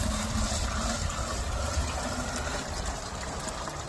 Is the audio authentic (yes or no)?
yes